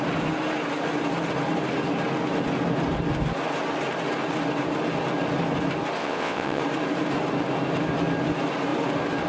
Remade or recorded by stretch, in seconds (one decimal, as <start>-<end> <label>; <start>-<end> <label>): 0.0-6.0 recorded; 6.0-6.6 remade; 6.6-9.3 recorded